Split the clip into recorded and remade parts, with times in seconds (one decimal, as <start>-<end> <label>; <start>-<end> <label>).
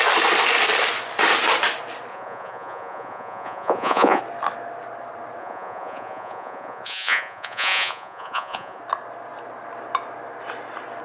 0.0-2.1 recorded; 2.1-4.2 remade; 4.2-5.4 recorded; 5.4-8.8 remade; 8.8-11.0 recorded